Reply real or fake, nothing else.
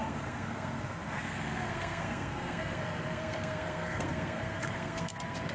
fake